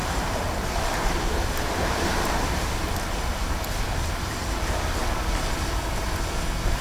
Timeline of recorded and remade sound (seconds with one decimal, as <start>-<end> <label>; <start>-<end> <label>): 0.0-3.6 remade; 3.6-6.8 recorded